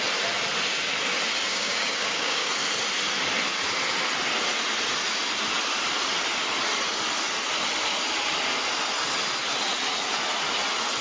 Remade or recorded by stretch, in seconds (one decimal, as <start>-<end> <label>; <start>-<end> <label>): 0.0-1.5 recorded; 1.5-2.5 remade; 2.5-11.0 recorded